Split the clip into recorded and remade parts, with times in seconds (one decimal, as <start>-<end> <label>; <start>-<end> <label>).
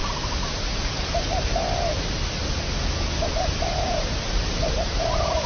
0.0-3.3 recorded; 3.3-5.5 remade